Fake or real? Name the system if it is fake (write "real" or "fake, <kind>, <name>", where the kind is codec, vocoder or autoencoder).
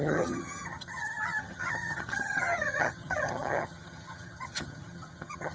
fake, vocoder, HiFi-GAN